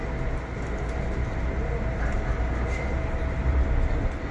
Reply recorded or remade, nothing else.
recorded